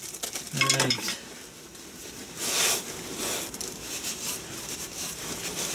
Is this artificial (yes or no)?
no